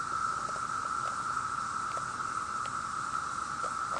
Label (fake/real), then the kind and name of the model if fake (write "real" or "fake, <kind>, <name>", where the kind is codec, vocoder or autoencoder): real